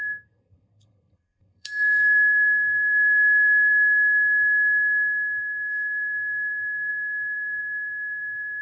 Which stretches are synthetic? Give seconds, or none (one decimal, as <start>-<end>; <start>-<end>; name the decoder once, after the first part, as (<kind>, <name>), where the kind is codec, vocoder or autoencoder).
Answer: 0.0-3.7 (codec, SNAC); 5.4-8.6